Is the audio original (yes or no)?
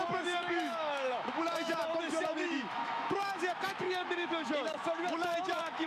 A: no